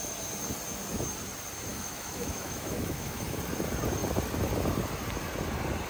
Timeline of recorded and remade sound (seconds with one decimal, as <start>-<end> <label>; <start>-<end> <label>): 0.0-1.7 recorded; 1.7-3.4 remade; 3.4-5.9 recorded